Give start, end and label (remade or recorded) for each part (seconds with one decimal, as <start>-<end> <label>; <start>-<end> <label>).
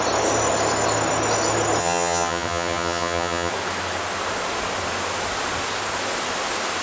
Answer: 0.0-1.8 recorded; 1.8-3.5 remade; 3.5-6.8 recorded